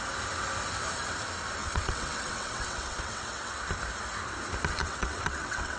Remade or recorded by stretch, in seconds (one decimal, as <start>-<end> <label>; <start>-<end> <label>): 0.0-1.6 recorded; 1.6-3.6 remade; 3.6-4.8 recorded; 4.8-5.8 remade